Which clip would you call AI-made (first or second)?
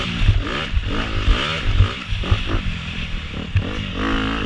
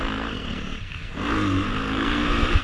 second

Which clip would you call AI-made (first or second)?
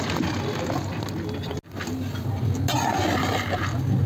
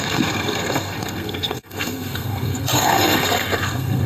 second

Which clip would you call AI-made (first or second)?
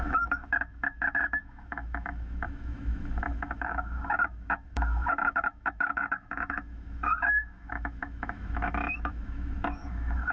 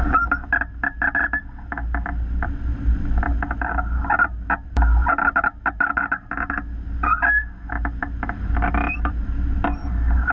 first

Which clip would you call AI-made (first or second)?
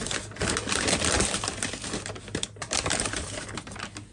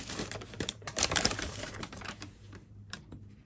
second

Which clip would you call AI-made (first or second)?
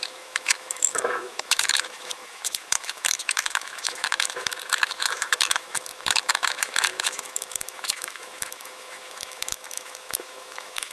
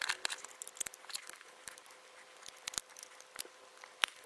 first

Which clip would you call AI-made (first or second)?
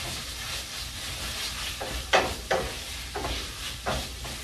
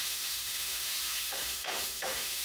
second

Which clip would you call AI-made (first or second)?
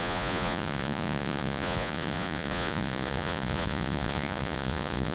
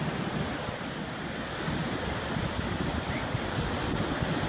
first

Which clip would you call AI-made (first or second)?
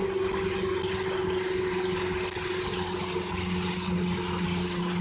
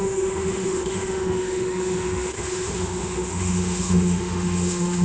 second